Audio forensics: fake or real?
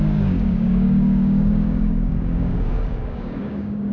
fake